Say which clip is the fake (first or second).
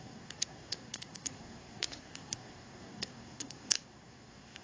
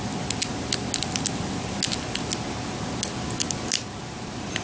first